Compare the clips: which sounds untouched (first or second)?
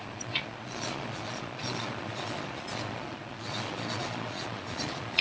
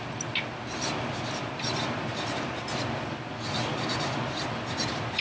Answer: second